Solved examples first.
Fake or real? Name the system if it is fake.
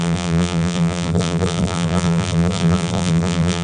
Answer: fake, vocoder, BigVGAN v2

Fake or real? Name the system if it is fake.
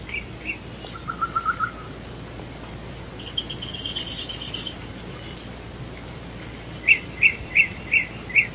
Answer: real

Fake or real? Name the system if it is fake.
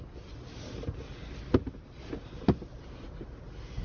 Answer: real